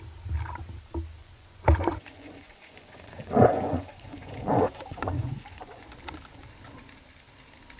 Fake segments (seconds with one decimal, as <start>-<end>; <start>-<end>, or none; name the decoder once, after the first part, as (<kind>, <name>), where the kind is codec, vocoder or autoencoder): 1.2-5.9 (vocoder, Vocos)